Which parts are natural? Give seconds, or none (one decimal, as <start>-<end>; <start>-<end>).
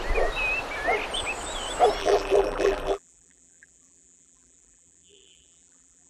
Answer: 0.0-2.0